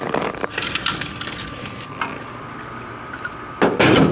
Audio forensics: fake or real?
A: real